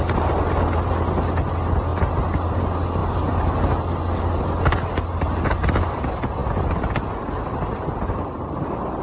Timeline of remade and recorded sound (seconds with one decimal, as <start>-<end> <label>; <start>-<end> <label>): 0.0-9.0 recorded